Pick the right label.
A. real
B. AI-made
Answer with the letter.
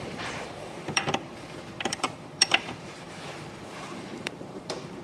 B